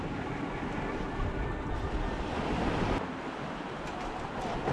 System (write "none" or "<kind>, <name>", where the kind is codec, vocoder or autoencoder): none